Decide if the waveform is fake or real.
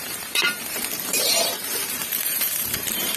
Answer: fake